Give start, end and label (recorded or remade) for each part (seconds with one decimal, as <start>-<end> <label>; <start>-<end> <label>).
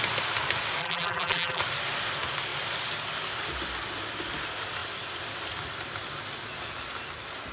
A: 0.0-0.8 recorded; 0.8-1.6 remade; 1.6-7.5 recorded